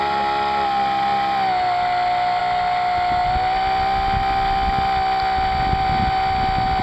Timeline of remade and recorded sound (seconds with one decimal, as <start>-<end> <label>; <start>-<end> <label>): 0.0-6.8 recorded